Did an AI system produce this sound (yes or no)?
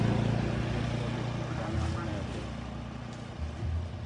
no